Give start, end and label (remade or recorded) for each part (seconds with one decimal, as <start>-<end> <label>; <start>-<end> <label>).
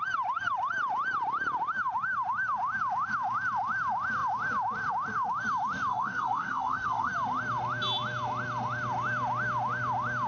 0.0-5.9 recorded; 5.9-7.1 remade; 7.1-10.3 recorded